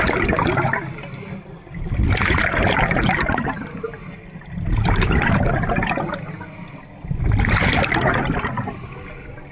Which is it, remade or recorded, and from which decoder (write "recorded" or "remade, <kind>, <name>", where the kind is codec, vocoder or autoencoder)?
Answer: recorded